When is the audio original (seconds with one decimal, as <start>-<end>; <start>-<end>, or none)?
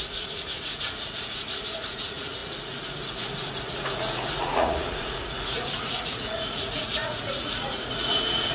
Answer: none